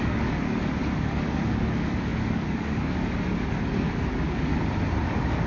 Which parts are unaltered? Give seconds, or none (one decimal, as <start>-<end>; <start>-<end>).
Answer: 4.5-5.0